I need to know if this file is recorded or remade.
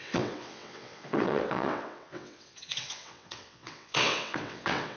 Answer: remade